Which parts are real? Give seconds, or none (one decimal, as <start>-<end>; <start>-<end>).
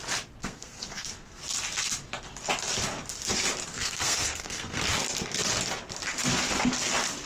0.0-0.4; 1.4-3.7; 4.8-7.3